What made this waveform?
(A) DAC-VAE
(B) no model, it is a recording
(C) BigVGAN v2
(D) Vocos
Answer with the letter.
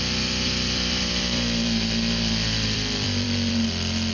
C